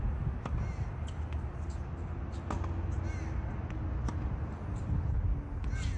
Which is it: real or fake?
real